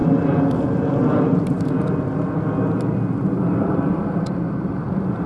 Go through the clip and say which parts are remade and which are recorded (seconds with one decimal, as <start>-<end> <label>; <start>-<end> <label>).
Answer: 0.0-3.2 recorded; 3.2-5.3 remade